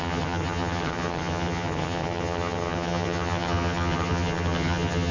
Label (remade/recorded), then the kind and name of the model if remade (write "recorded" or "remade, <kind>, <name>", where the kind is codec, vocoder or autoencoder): remade, vocoder, HiFi-GAN